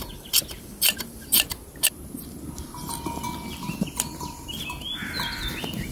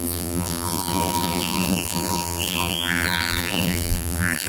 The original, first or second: first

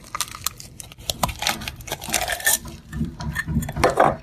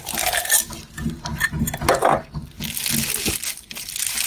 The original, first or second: second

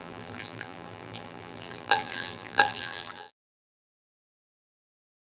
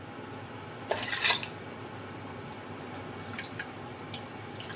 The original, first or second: second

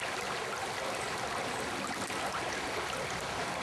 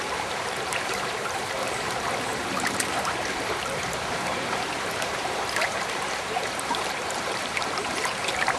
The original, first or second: first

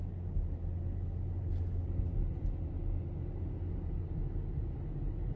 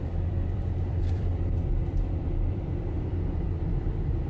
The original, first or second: first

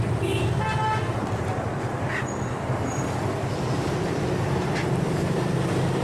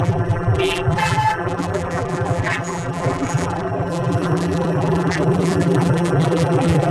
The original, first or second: first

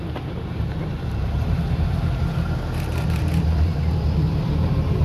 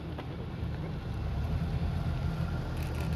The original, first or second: second